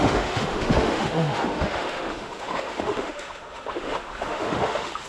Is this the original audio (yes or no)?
no